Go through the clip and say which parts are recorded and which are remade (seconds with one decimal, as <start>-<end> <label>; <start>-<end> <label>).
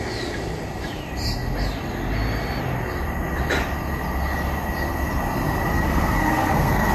0.0-5.7 recorded; 5.7-6.9 remade